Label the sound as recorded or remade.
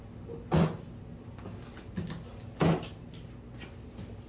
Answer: recorded